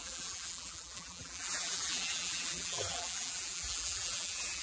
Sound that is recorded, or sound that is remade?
remade